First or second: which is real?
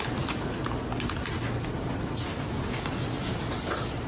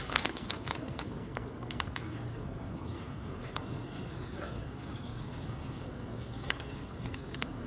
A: first